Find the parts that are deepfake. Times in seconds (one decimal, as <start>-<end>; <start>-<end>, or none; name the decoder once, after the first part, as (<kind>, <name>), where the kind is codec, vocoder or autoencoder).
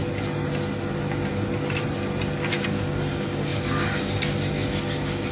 2.5-5.3 (codec, DAC)